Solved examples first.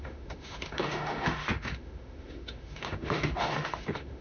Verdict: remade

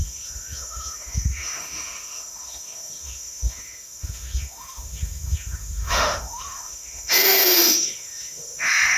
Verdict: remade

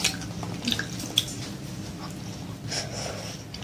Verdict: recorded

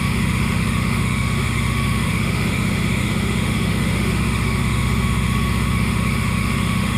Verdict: remade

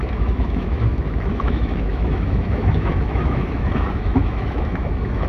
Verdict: remade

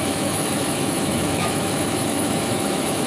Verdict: remade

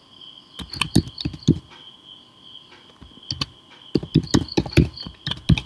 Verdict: recorded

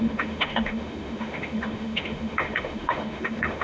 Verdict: remade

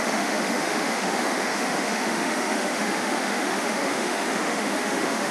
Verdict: remade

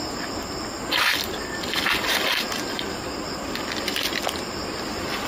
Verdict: recorded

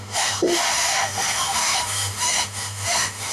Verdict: remade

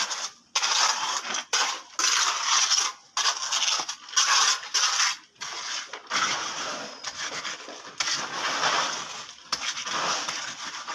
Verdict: recorded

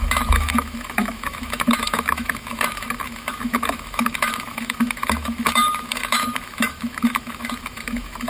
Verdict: remade